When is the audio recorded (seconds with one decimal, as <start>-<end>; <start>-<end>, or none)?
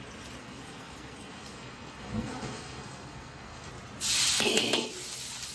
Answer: 0.0-0.4; 3.7-4.3; 4.9-5.5